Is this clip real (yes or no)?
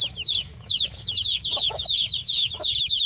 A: no